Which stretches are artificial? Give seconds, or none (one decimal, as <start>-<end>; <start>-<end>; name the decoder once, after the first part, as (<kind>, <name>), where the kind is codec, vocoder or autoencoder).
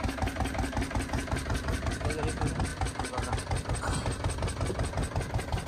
none